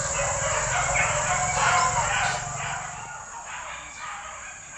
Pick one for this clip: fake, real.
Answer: real